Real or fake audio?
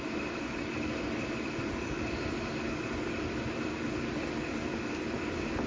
real